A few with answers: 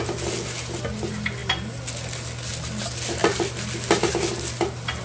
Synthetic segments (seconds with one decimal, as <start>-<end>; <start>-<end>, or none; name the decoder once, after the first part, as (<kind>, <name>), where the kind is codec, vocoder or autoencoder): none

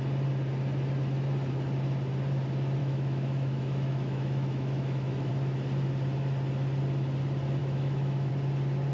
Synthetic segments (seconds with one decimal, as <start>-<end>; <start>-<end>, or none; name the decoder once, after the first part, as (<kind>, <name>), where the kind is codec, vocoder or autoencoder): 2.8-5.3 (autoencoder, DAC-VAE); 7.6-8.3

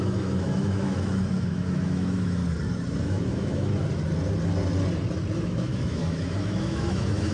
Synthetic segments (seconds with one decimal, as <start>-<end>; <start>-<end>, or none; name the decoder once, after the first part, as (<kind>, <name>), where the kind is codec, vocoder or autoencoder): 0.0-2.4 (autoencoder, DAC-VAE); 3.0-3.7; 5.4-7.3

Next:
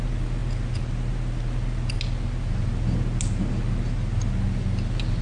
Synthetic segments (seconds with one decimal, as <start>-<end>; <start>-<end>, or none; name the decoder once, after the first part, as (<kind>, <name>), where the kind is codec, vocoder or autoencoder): none

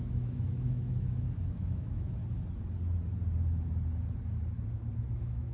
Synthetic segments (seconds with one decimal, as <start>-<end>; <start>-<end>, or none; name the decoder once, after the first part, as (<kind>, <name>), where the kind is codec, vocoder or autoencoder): 0.0-2.2 (autoencoder, DAC-VAE); 5.1-5.5